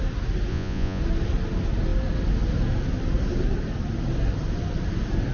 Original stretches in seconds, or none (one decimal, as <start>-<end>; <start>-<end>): 0.0-0.5; 1.0-5.3